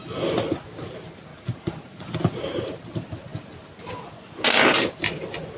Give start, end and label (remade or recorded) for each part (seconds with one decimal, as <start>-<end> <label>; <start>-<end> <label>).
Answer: 0.0-1.3 recorded; 1.3-2.1 remade; 2.1-5.6 recorded